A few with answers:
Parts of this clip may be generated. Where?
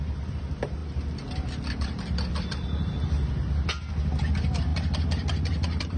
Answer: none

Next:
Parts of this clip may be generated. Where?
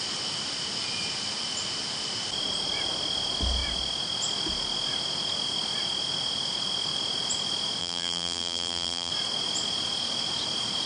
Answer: 7.8-9.1